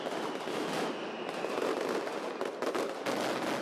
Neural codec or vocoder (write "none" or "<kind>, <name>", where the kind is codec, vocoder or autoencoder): none